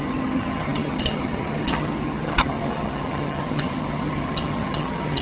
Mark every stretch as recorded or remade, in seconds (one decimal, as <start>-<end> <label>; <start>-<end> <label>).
0.0-5.2 remade